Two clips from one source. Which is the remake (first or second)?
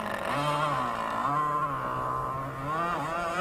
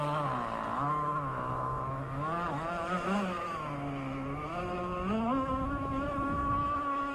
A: second